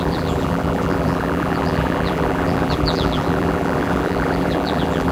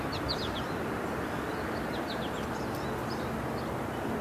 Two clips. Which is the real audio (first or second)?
second